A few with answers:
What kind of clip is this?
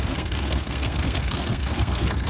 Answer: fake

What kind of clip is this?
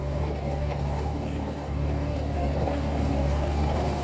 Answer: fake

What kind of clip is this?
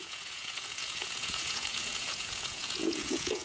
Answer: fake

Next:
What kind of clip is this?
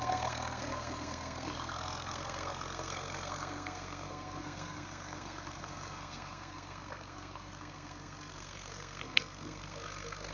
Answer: fake